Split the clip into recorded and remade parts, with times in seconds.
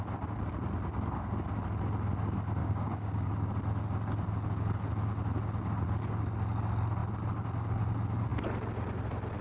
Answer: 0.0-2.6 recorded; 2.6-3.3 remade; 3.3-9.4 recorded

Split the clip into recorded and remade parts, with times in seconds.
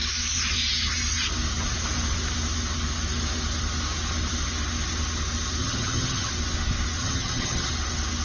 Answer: 0.0-5.6 recorded; 5.6-6.3 remade; 6.3-7.0 recorded; 7.0-7.7 remade; 7.7-8.2 recorded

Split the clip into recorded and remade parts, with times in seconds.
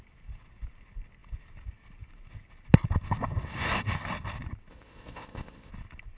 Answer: 0.0-4.7 recorded; 4.7-5.7 remade; 5.7-6.2 recorded